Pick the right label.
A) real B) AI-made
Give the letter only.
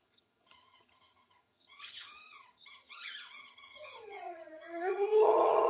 B